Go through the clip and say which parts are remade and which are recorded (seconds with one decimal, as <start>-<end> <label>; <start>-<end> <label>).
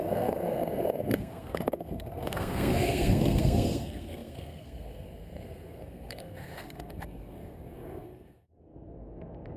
0.0-9.6 remade